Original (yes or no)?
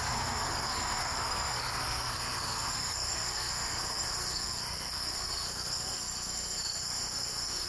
no